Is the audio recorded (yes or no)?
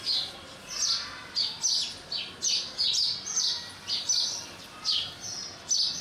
yes